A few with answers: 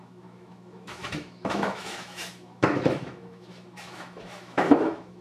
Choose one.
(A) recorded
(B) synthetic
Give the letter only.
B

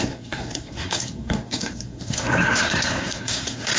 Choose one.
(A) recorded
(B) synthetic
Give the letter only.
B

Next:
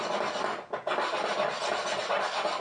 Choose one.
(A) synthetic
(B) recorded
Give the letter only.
B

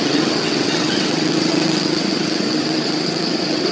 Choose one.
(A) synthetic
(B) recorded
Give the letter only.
A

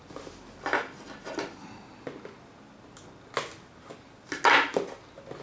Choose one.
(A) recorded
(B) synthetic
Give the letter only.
A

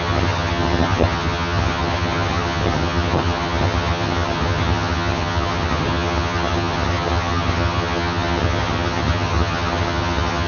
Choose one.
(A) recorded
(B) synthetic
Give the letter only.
B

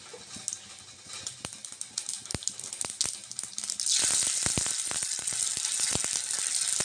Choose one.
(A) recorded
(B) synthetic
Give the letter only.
A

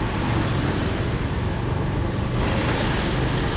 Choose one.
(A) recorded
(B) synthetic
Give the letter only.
A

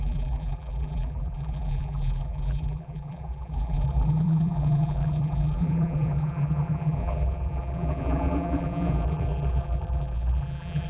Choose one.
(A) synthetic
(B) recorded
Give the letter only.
A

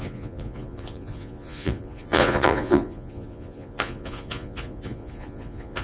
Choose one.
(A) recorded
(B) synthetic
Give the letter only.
B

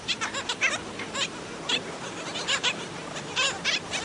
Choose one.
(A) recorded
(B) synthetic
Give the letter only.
A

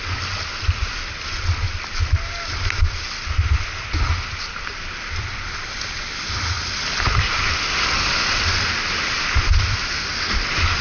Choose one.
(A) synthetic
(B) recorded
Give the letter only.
B